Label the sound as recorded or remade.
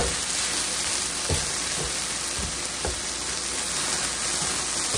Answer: recorded